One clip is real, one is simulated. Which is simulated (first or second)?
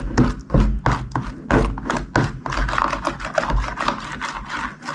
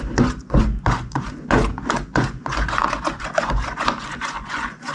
second